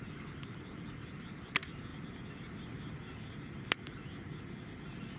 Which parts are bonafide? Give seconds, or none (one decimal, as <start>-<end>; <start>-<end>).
0.0-5.2